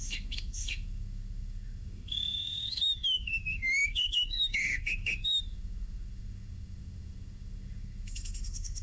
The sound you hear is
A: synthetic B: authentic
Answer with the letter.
A